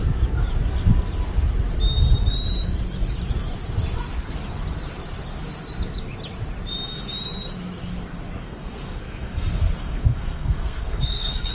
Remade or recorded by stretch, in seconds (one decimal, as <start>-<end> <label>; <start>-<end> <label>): 0.0-8.4 recorded; 8.4-11.5 remade